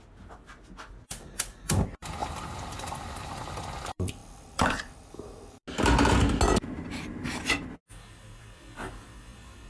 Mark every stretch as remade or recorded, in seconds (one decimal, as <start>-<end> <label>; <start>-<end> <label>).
0.0-9.7 recorded